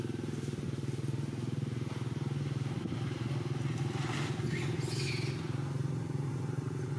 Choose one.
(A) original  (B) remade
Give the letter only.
A